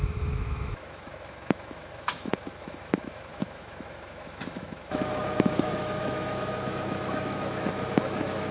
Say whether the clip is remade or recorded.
remade